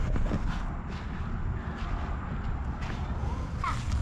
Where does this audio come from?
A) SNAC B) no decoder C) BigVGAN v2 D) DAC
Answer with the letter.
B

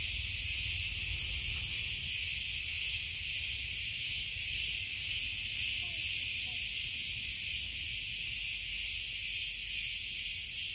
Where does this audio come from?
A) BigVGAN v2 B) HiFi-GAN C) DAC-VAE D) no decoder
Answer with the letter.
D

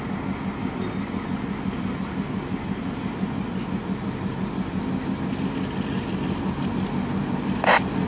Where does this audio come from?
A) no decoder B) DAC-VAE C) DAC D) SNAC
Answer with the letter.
A